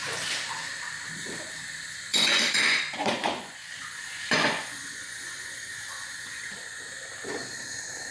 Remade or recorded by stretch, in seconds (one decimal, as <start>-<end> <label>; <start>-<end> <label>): 0.0-2.1 recorded; 2.1-6.8 remade; 6.8-8.1 recorded